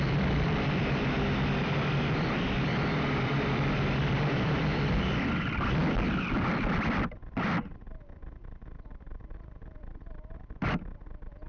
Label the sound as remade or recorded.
remade